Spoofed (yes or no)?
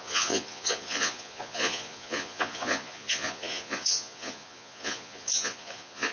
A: yes